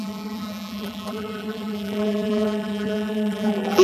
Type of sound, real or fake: fake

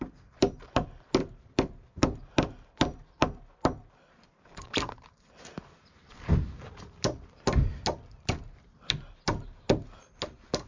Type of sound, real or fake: real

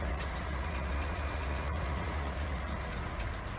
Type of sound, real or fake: fake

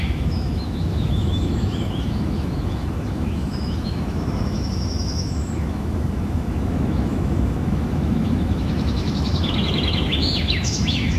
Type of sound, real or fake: fake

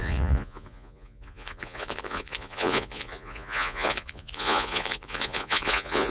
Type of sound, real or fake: fake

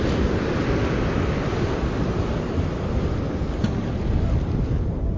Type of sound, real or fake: real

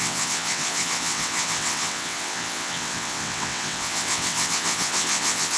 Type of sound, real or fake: fake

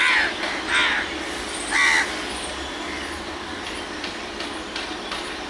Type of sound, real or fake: real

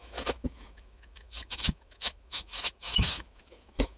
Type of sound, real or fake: fake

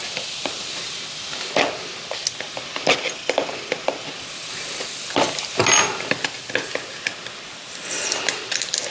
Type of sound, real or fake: real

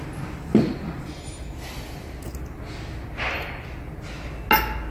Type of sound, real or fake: real